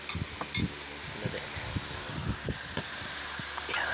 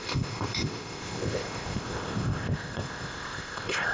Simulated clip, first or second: second